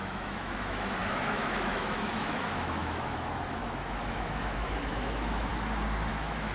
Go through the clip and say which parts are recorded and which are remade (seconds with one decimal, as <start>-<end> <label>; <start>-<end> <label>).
0.0-5.5 remade; 5.5-6.1 recorded; 6.1-6.5 remade